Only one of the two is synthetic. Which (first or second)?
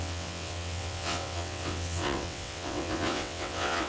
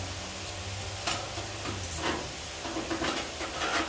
first